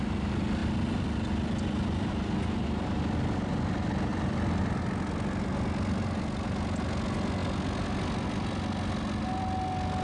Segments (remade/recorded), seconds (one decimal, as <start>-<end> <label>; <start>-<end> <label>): 0.0-0.6 recorded; 0.6-1.3 remade; 1.3-4.1 recorded; 4.1-4.6 remade; 4.6-10.0 recorded